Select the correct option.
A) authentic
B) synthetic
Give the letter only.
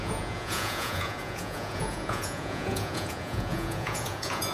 B